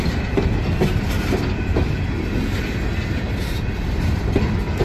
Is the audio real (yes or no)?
yes